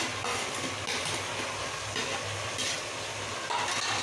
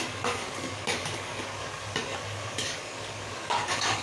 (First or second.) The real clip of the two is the first